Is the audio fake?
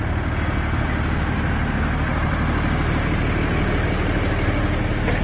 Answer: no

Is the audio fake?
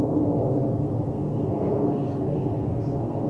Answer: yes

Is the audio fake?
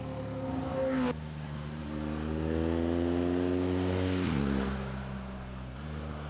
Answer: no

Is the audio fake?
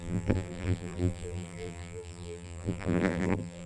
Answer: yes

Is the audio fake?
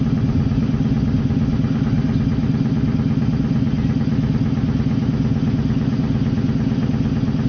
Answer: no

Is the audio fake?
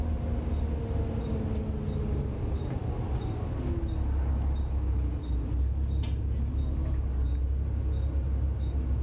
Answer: no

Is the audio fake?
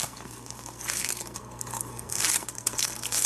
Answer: yes